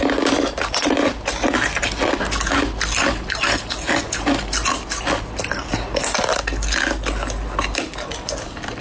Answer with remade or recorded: recorded